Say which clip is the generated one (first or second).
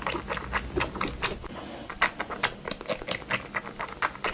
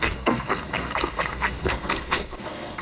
second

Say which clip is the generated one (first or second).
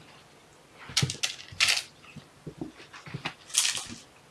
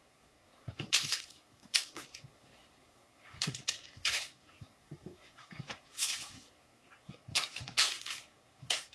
second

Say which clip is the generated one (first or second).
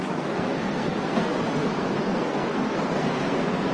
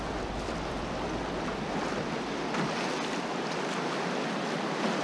first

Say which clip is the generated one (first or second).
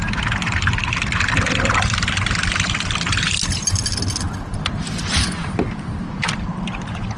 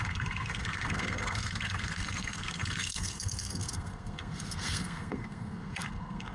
second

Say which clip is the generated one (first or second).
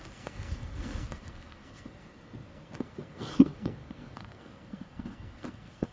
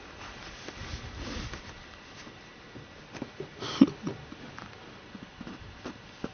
first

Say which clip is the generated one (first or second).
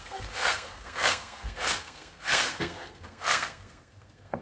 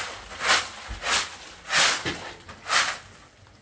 first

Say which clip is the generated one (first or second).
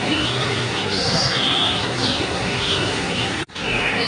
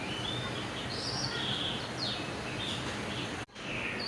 first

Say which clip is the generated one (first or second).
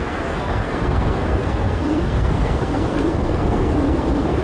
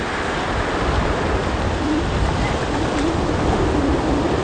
first